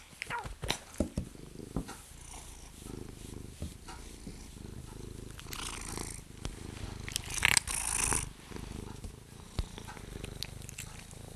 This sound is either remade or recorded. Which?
recorded